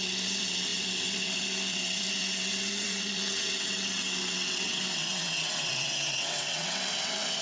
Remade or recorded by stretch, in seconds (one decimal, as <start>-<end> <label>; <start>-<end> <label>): 0.0-7.4 remade